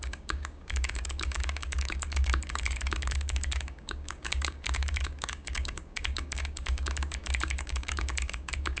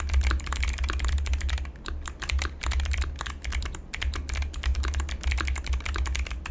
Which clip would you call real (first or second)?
second